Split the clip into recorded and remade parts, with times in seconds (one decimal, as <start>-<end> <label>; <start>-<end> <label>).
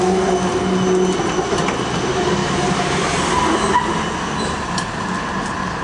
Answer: 0.0-5.8 recorded